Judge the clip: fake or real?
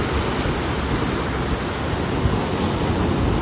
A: real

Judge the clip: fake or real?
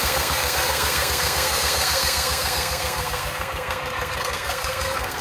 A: fake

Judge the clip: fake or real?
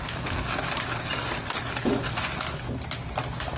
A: real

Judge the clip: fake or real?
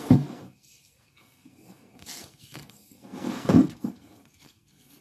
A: fake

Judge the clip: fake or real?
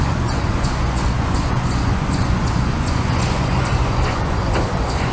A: fake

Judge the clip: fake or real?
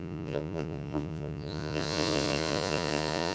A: fake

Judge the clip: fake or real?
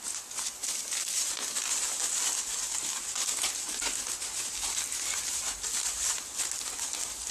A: real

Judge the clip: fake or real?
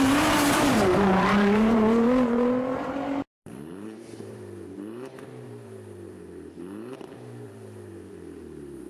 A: fake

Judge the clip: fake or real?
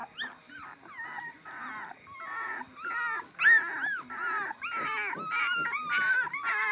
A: real